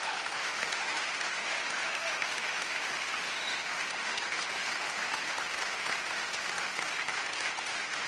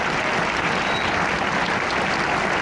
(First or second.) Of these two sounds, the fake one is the first